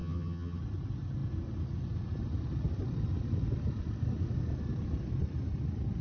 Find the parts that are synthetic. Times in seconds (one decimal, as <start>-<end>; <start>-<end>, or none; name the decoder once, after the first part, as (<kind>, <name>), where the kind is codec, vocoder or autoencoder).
0.0-0.6 (vocoder, HiFi-GAN)